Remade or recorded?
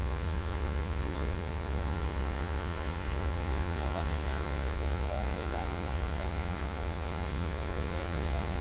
remade